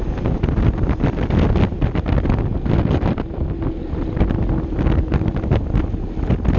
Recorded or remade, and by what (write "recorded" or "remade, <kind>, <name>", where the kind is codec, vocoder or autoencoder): recorded